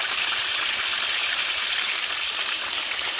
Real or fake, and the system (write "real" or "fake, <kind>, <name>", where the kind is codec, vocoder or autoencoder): fake, vocoder, BigVGAN v2